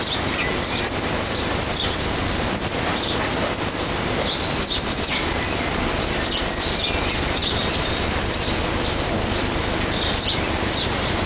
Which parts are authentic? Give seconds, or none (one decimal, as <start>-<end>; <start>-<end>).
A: 0.0-11.3